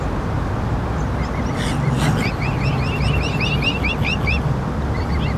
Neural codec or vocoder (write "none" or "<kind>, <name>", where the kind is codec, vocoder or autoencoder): none